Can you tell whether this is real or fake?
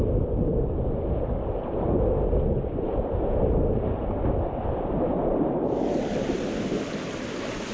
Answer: real